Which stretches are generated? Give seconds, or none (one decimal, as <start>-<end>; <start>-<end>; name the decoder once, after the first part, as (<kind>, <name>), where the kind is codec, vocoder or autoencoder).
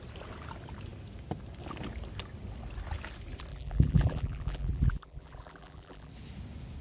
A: 3.5-6.1 (vocoder, BigVGAN v2)